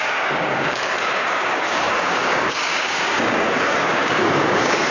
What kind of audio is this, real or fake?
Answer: fake